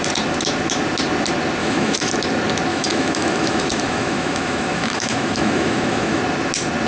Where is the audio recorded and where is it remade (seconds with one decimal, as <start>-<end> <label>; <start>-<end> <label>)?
0.0-1.6 recorded; 1.6-2.1 remade; 2.1-2.7 recorded; 2.7-6.2 remade; 6.2-6.9 recorded